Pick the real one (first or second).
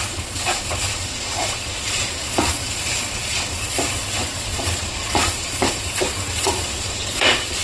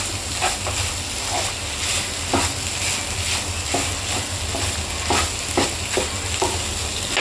second